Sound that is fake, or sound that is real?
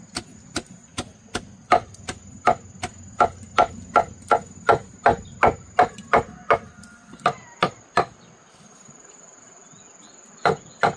real